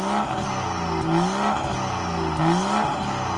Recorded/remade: recorded